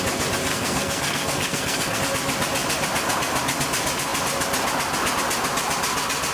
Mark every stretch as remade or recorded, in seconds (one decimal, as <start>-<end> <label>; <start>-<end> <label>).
0.0-0.5 recorded; 0.5-2.0 remade; 2.0-6.3 recorded